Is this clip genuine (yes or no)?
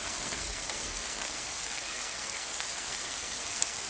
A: no